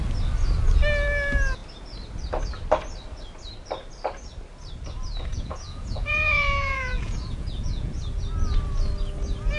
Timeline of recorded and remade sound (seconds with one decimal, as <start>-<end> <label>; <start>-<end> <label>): 0.0-5.3 recorded; 5.3-7.9 remade; 7.9-9.6 recorded

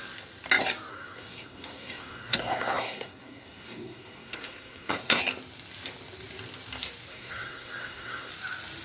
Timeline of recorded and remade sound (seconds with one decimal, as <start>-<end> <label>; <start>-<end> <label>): 0.0-0.9 recorded; 0.9-5.2 remade; 5.2-7.1 recorded; 7.1-8.3 remade; 8.3-8.8 recorded

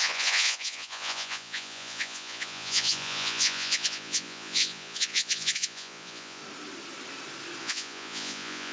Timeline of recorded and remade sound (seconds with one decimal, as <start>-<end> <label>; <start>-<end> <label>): 0.0-6.4 remade; 6.4-7.6 recorded; 7.6-8.7 remade

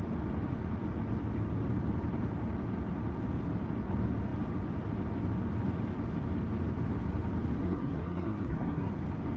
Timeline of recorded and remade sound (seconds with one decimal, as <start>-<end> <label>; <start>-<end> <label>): 0.0-7.6 recorded; 7.6-8.9 remade; 8.9-9.4 recorded

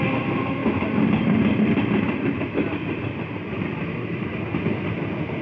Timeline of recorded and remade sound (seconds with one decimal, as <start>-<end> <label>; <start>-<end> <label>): 0.0-0.6 recorded; 0.6-3.8 remade; 3.8-5.4 recorded